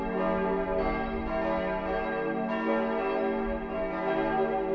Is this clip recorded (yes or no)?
yes